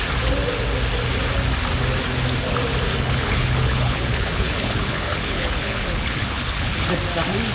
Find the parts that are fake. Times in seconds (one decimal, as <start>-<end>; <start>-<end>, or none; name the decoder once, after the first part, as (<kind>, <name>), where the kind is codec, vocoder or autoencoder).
2.9-6.9 (codec, HILCodec)